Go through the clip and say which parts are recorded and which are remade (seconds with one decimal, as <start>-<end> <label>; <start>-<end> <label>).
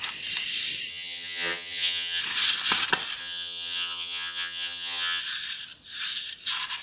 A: 0.0-0.9 recorded; 0.9-2.2 remade; 2.2-3.2 recorded; 3.2-5.2 remade; 5.2-6.8 recorded